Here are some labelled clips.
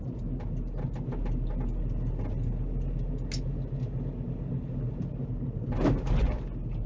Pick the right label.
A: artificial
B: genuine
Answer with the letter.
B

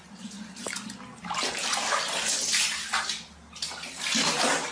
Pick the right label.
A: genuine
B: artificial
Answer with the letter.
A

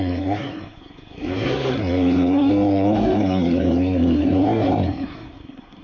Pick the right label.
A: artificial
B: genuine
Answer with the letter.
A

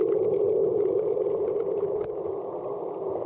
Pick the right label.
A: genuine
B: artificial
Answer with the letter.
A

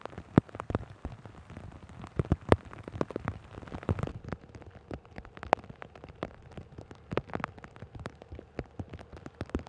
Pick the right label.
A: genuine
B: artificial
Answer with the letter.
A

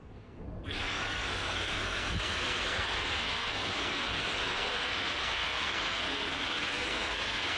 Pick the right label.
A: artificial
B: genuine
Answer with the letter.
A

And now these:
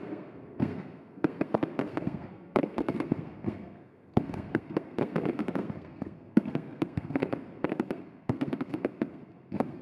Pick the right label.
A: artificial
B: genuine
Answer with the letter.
A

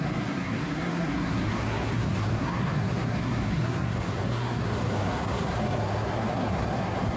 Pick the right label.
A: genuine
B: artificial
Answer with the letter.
B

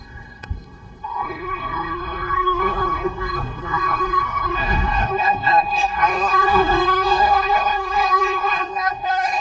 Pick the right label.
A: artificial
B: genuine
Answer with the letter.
A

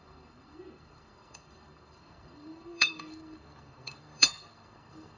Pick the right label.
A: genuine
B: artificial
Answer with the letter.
B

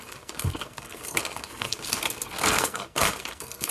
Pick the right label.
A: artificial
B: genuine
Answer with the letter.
A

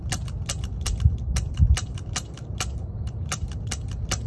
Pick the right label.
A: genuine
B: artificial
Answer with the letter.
A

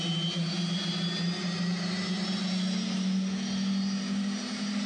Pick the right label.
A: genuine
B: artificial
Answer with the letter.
A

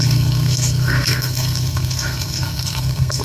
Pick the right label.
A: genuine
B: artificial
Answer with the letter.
B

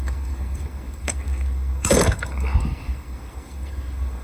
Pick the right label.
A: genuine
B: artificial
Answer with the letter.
B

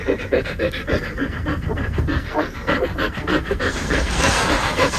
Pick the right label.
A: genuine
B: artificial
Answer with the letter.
B